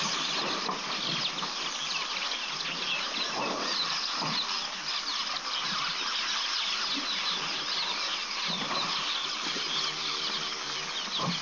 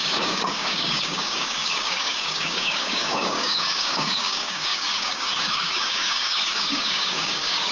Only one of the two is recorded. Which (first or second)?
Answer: first